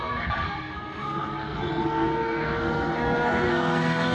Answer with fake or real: fake